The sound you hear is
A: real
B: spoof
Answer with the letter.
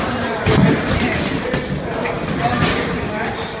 A